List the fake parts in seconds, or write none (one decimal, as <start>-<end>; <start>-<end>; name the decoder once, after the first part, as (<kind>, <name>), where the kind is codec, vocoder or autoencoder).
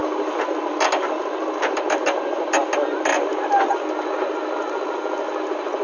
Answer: none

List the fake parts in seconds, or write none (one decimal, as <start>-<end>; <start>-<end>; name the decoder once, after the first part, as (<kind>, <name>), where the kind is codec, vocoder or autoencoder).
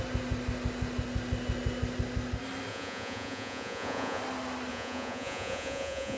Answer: 2.7-4.2 (vocoder, Vocos); 4.7-6.2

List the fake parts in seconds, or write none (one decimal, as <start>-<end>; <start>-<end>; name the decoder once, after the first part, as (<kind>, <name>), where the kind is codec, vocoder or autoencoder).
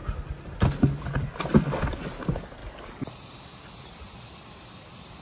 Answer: 2.6-3.1 (vocoder, BigVGAN v2)